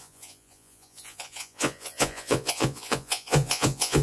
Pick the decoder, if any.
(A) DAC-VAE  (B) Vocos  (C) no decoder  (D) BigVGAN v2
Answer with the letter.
B